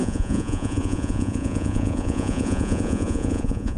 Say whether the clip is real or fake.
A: fake